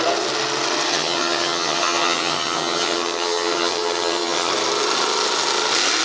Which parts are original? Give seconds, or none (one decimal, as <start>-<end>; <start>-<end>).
0.0-0.9; 4.5-6.0